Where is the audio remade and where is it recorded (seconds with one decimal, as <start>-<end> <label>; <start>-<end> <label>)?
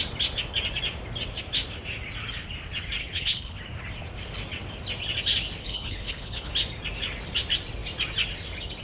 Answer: 0.0-3.0 recorded; 3.0-3.6 remade; 3.6-5.6 recorded; 5.6-6.5 remade; 6.5-8.8 recorded